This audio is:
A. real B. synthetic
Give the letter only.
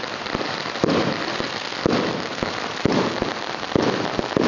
A